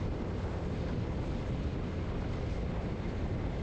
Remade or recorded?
remade